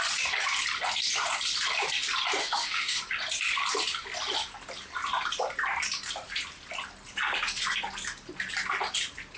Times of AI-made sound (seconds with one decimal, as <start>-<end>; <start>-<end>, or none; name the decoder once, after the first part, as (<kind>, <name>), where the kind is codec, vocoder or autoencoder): 2.4-3.0 (autoencoder, DAC-VAE)